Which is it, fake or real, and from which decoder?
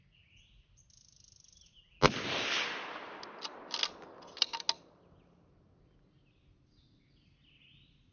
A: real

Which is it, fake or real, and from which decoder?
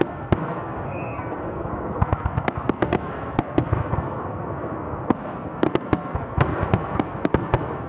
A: fake, codec, SNAC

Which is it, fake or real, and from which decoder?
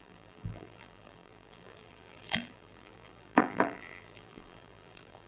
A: fake, vocoder, BigVGAN v2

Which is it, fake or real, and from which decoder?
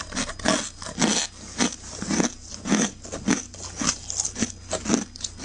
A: real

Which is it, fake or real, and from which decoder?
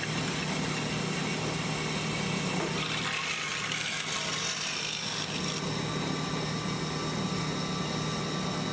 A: real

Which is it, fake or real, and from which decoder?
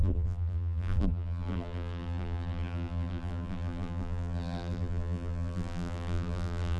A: fake, vocoder, BigVGAN v2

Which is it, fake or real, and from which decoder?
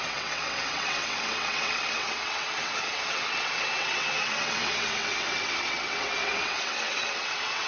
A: fake, vocoder, WaveNeXt